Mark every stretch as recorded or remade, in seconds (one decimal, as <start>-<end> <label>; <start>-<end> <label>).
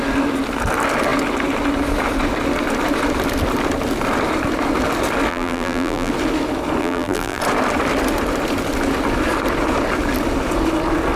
0.0-5.3 recorded; 5.3-6.1 remade; 6.1-6.8 recorded; 6.8-7.4 remade; 7.4-11.2 recorded